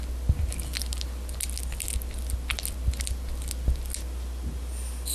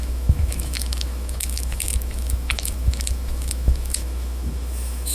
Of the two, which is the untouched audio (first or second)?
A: first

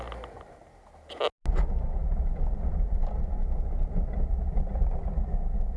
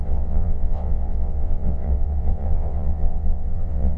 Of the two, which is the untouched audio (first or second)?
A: first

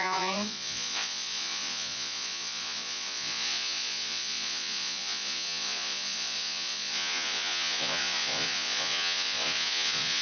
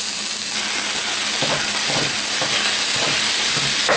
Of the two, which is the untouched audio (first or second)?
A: second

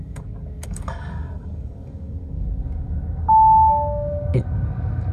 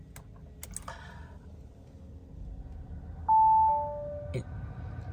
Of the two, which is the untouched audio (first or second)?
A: second